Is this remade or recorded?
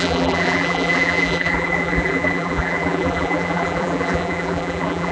remade